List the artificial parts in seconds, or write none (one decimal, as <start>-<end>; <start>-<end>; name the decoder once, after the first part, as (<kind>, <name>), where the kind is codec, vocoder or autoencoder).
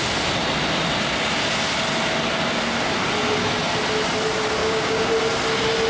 4.6-5.1 (codec, DAC)